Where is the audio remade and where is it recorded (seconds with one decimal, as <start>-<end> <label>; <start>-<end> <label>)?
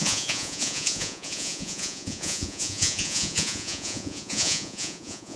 0.0-5.4 remade